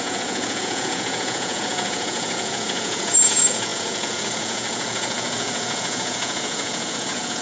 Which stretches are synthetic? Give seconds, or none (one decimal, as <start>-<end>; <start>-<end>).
0.0-7.4